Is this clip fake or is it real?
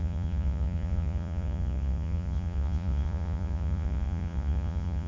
fake